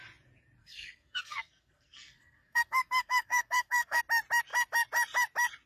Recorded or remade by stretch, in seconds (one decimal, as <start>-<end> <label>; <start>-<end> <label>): 0.0-0.6 recorded; 0.6-4.0 remade; 4.0-5.7 recorded